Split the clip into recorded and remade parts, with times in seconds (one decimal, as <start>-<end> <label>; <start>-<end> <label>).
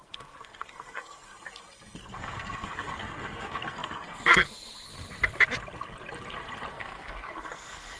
0.0-1.3 remade; 1.3-2.0 recorded; 2.0-4.9 remade; 4.9-6.7 recorded; 6.7-8.0 remade